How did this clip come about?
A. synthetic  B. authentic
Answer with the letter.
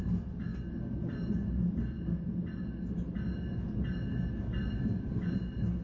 B